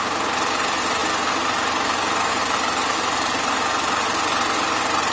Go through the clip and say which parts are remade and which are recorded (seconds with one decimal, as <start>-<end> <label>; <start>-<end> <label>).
0.0-5.1 recorded